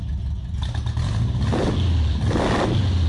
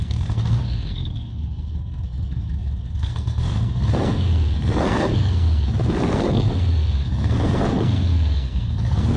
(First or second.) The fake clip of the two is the second